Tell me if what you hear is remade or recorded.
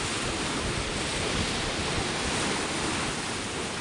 recorded